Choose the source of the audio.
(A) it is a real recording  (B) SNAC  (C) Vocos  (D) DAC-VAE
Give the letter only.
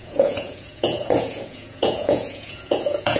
C